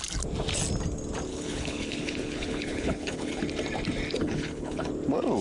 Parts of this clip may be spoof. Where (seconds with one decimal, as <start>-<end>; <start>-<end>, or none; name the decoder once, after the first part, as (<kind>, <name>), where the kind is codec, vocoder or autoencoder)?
1.3-3.4 (codec, HILCodec); 4.2-4.9